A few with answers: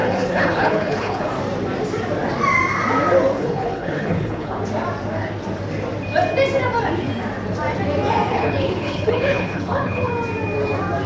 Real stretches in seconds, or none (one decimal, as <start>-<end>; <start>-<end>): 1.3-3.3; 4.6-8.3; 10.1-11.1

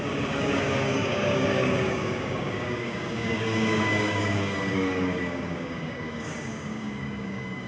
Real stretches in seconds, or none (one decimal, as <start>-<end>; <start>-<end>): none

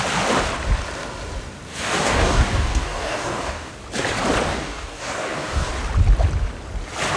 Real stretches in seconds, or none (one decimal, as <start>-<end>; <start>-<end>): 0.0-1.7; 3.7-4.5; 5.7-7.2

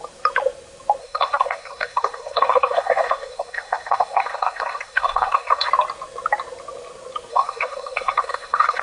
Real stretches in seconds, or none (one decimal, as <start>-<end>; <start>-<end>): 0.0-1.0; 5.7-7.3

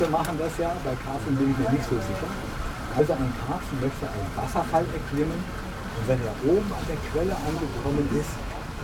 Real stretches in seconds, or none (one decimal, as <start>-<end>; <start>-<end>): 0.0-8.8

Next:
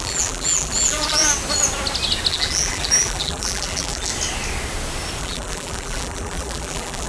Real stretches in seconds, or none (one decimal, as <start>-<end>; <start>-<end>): 1.2-2.3; 4.1-5.2

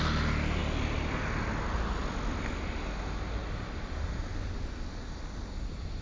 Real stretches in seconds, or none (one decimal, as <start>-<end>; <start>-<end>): 0.0-6.0